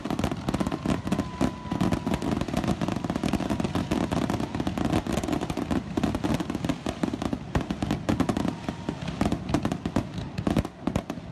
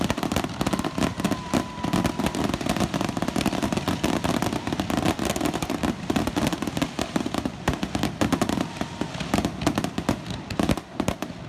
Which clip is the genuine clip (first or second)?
first